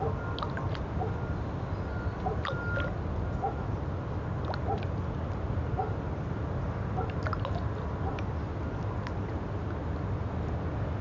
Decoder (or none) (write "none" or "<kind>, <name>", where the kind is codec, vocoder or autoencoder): none